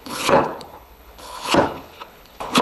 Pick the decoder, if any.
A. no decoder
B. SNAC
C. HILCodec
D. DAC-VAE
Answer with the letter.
C